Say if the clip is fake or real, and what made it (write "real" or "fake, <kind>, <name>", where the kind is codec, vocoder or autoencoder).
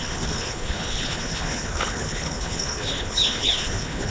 fake, codec, HILCodec